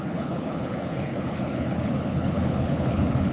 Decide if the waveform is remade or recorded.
remade